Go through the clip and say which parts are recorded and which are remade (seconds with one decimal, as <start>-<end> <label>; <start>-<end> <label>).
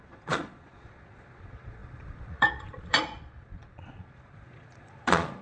0.0-5.4 remade